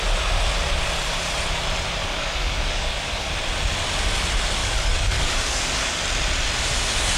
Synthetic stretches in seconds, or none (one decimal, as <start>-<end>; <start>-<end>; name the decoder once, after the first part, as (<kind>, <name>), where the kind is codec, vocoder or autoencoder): 2.0-3.3 (codec, DAC); 4.6-6.0